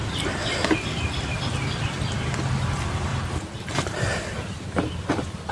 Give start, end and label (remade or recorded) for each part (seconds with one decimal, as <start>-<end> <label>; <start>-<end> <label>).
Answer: 0.0-5.5 remade

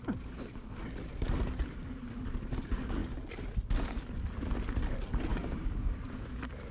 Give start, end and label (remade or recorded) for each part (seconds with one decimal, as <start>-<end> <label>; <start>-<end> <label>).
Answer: 0.0-5.3 recorded; 5.3-5.9 remade; 5.9-6.7 recorded

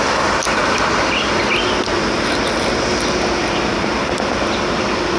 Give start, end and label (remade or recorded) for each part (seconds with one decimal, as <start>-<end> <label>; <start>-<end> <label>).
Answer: 0.0-5.2 recorded

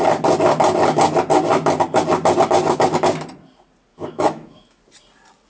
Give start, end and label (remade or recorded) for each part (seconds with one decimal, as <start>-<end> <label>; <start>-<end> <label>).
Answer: 0.0-3.9 recorded; 3.9-4.8 remade; 4.8-5.5 recorded